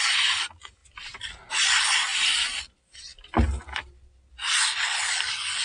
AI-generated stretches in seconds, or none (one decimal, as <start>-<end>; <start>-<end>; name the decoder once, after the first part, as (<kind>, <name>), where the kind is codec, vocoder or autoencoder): 0.0-2.1 (vocoder, BigVGAN v2); 2.6-5.6